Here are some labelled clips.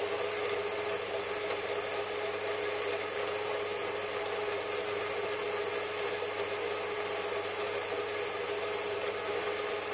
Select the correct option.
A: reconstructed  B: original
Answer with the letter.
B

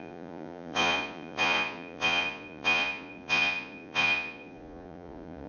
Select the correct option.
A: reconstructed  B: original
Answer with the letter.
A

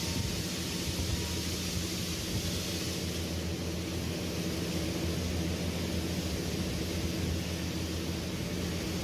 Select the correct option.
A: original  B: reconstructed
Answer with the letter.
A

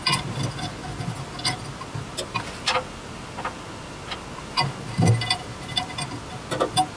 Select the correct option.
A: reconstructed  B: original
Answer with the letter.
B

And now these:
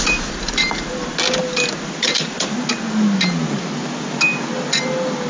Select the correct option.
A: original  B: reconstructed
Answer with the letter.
A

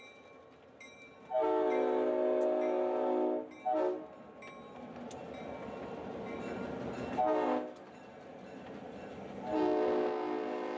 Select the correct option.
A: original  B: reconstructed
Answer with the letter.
A